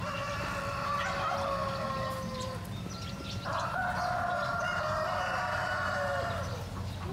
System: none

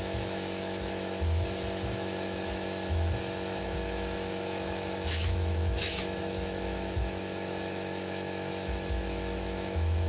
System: autoencoder, DAC-VAE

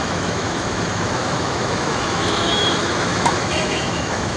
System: autoencoder, DAC-VAE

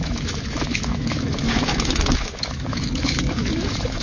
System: autoencoder, DAC-VAE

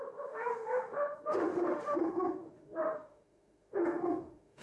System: autoencoder, DAC-VAE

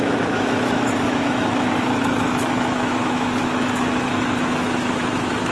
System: autoencoder, DAC-VAE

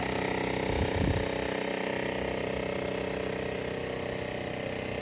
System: none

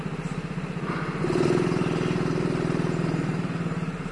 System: none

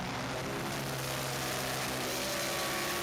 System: none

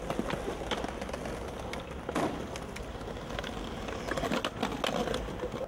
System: none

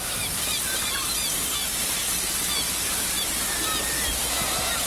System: none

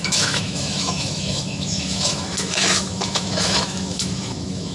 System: autoencoder, DAC-VAE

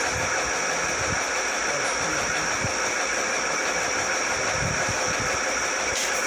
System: none